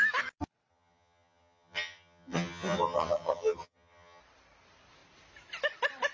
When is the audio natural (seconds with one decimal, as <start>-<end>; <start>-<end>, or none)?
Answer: 0.0-0.7; 4.2-6.1